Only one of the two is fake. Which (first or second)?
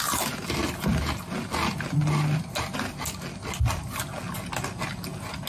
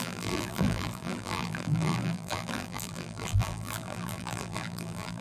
second